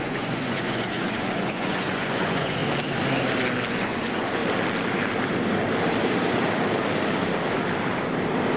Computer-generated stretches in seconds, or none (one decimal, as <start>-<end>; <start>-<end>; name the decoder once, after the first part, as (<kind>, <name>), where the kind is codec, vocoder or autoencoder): 0.0-2.6 (vocoder, Vocos); 3.7-4.4